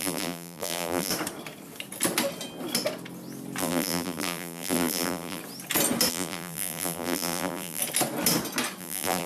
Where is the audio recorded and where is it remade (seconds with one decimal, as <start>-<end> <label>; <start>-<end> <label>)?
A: 0.0-1.1 remade; 1.1-3.6 recorded; 3.6-5.4 remade; 5.4-6.1 recorded; 6.1-7.8 remade; 7.8-8.8 recorded; 8.8-9.3 remade